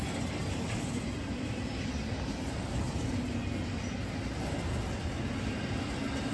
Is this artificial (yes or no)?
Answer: no